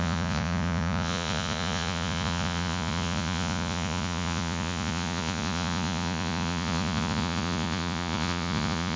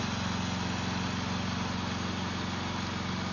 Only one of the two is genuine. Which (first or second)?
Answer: second